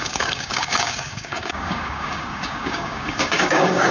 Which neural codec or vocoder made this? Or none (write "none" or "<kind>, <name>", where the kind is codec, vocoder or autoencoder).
codec, DAC